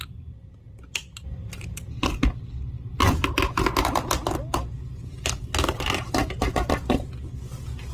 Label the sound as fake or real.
real